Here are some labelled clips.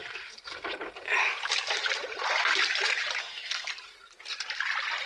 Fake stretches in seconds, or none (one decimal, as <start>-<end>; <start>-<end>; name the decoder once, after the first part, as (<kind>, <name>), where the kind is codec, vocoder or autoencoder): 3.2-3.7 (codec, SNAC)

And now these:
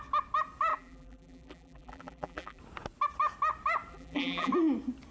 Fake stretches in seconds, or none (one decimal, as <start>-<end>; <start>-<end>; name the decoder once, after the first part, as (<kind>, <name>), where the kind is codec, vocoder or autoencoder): 0.7-2.6 (vocoder, BigVGAN v2); 3.9-4.5

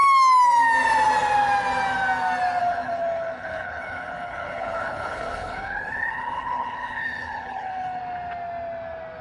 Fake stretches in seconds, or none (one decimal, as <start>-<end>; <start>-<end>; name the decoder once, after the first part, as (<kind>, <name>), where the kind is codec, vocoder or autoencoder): 2.6-8.0 (codec, HILCodec)

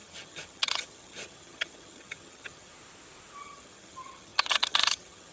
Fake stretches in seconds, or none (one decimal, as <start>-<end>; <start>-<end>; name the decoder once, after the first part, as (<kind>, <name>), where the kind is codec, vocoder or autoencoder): 0.0-2.7 (vocoder, HiFi-GAN); 3.4-5.3